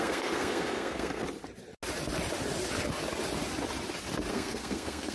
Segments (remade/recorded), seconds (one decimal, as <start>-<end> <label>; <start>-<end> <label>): 0.0-1.2 remade; 1.2-4.3 recorded; 4.3-5.1 remade